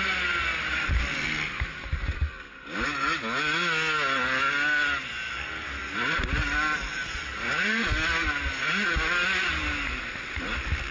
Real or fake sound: real